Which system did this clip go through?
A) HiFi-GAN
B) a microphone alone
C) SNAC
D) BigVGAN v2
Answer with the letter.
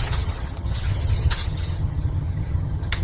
A